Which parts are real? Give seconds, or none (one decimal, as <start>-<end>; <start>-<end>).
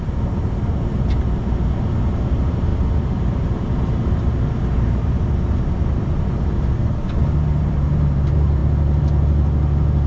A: 0.0-10.1